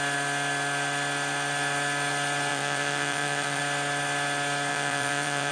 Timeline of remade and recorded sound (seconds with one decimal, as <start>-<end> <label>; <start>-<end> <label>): 0.0-2.5 recorded; 2.5-3.6 remade; 3.6-4.7 recorded; 4.7-5.5 remade